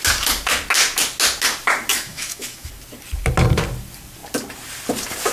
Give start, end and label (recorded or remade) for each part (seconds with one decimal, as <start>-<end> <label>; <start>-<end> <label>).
0.0-1.9 recorded; 1.9-2.7 remade; 2.7-5.3 recorded